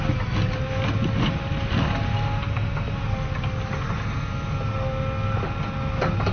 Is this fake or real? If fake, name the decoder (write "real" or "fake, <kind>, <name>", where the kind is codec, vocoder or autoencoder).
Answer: real